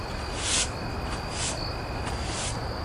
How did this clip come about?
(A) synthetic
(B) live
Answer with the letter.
B